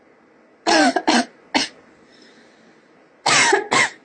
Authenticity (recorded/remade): recorded